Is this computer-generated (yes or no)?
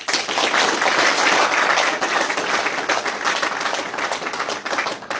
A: no